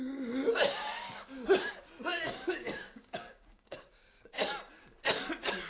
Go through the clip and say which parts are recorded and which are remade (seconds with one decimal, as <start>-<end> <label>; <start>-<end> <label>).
0.0-0.8 recorded; 0.8-1.7 remade; 1.7-2.1 recorded; 2.1-4.5 remade; 4.5-5.7 recorded